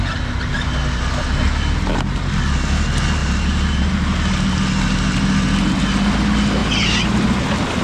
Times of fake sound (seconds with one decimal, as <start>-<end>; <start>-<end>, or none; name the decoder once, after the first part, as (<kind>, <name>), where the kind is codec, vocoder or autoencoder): 3.2-3.9 (vocoder, BigVGAN v2)